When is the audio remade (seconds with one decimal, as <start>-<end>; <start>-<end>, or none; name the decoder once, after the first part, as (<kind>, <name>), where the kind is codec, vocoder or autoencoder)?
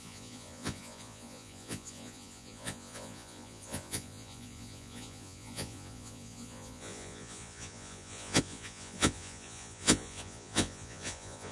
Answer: 0.0-11.5 (vocoder, Vocos)